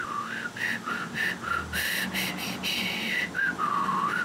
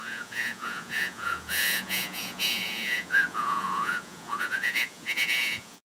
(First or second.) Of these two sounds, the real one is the first